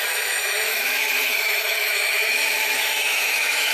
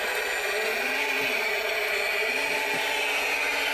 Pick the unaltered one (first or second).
second